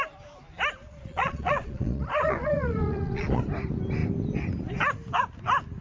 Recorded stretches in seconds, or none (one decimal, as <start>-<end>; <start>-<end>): 0.0-0.8; 3.4-5.8